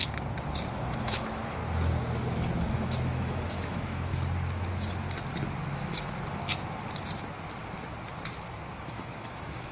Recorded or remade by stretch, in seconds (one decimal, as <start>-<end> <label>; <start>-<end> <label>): 0.0-0.7 recorded; 0.7-1.6 remade; 1.6-2.7 recorded; 2.7-4.1 remade; 4.1-8.7 recorded; 8.7-9.7 remade